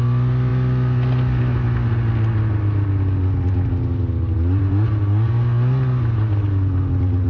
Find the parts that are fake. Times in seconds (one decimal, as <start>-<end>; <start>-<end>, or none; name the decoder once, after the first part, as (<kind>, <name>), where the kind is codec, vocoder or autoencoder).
none